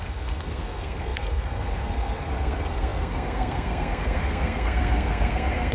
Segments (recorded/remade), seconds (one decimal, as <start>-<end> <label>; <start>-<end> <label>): 0.0-5.7 remade